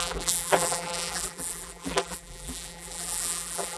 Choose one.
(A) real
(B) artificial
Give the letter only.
B